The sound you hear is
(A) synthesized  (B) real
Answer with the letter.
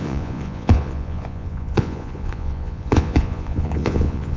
A